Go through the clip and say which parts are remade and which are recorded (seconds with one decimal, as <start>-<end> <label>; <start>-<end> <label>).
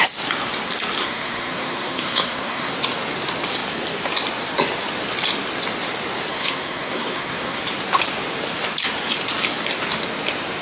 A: 0.0-1.0 recorded; 1.0-2.7 remade; 2.7-6.3 recorded; 6.3-7.6 remade; 7.6-10.6 recorded